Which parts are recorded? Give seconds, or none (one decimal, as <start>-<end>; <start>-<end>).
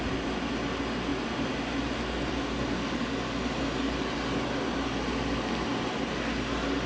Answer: 0.0-6.9